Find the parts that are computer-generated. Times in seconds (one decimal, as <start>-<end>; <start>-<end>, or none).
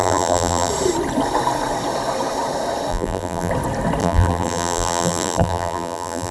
0.0-0.7; 2.9-3.5; 4.0-6.3